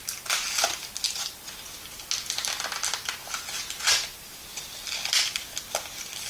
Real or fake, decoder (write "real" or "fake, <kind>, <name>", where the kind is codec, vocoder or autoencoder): real